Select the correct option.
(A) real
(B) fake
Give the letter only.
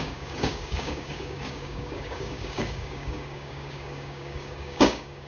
B